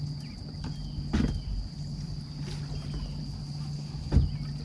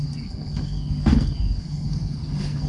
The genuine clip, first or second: first